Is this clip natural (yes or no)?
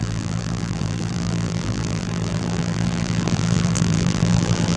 no